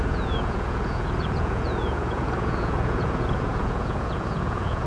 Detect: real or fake fake